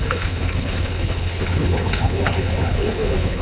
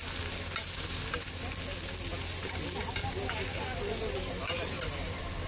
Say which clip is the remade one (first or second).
first